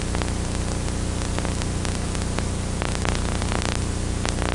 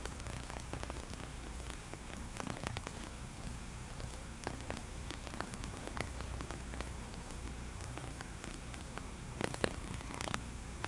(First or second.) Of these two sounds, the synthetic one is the second